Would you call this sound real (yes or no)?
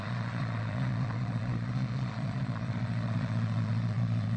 no